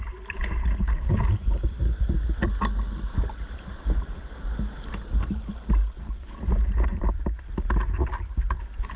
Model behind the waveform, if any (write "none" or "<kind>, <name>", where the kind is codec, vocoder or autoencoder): none